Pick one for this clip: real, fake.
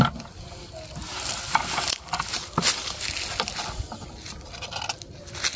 real